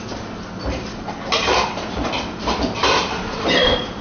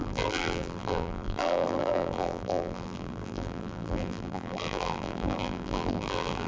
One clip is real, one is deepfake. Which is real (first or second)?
first